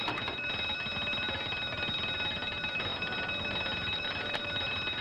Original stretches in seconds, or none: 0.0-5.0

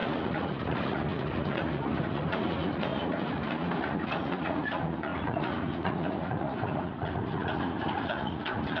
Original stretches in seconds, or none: none

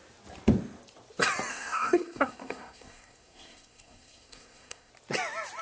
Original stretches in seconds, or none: 0.0-1.5; 4.9-5.6

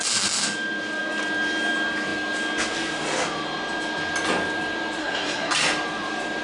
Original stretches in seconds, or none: 0.0-5.0; 5.5-6.4

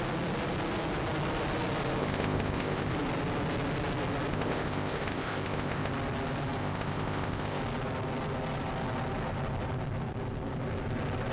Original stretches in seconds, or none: 0.0-2.0; 2.9-4.3; 5.9-6.6; 7.6-11.3

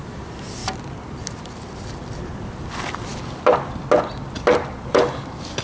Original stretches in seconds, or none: 0.0-5.6